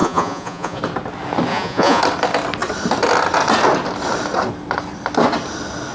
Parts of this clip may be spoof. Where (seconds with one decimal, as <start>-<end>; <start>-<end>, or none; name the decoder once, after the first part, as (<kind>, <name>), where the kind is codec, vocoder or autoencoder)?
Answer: 0.0-0.8 (vocoder, Vocos); 1.5-2.0